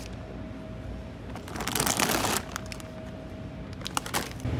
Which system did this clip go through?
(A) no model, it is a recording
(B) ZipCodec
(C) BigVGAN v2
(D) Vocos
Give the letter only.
A